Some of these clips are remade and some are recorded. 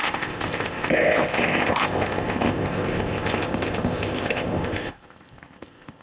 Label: remade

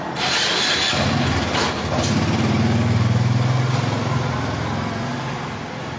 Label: recorded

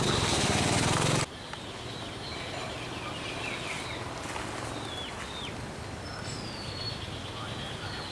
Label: recorded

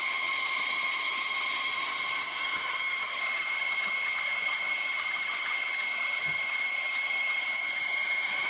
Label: remade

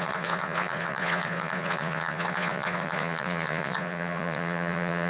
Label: remade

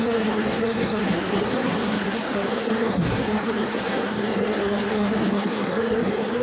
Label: remade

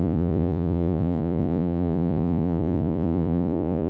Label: remade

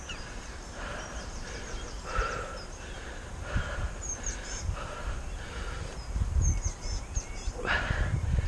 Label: remade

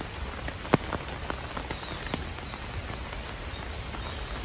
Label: recorded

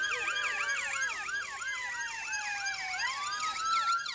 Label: recorded